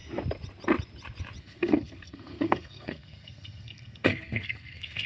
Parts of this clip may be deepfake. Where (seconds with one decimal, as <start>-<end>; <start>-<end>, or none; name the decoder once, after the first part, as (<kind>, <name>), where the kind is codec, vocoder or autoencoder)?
1.4-5.1 (codec, SNAC)